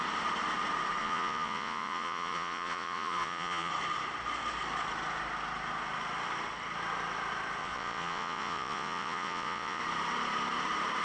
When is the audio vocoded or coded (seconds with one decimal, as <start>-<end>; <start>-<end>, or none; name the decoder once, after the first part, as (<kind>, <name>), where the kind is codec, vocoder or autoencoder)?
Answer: 1.0-3.7 (vocoder, Vocos); 7.6-9.8